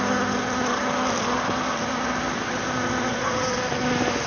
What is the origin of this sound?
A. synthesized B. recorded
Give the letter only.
B